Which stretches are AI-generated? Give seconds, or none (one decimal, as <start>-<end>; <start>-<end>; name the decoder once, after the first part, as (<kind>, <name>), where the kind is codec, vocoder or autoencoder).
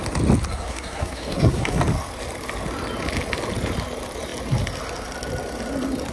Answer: 0.5-1.8 (codec, SNAC)